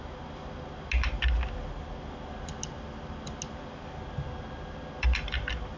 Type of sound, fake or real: real